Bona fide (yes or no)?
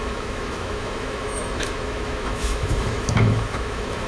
no